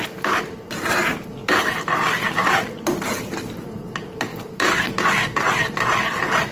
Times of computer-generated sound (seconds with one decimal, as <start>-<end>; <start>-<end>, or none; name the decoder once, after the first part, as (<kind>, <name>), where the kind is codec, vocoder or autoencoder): none